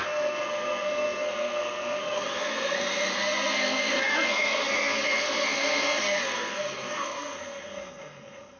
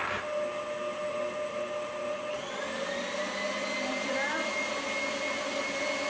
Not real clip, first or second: first